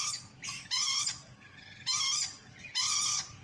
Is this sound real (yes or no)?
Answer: no